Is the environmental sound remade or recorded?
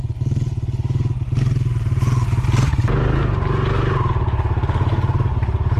recorded